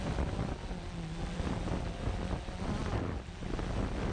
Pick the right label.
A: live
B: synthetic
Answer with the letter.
A